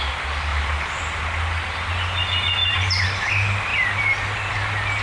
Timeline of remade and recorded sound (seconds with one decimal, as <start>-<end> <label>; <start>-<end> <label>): 0.0-0.5 recorded; 0.5-1.2 remade; 1.2-2.6 recorded; 2.6-3.3 remade; 3.3-5.0 recorded